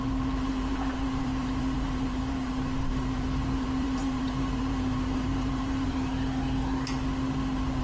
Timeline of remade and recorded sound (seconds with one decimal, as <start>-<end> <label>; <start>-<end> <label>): 0.0-6.1 remade; 6.1-7.8 recorded